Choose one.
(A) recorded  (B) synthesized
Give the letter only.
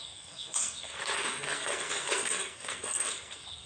B